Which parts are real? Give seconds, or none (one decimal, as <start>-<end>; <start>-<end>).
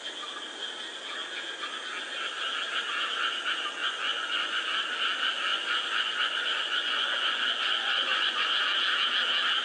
0.0-3.8; 4.6-5.5; 8.6-9.6